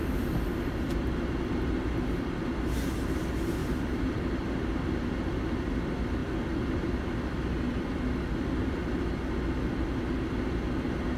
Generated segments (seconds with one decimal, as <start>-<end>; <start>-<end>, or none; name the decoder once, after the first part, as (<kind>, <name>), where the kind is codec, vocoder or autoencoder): 0.0-2.4 (vocoder, BigVGAN v2); 3.6-4.4; 6.2-7.4; 7.9-9.1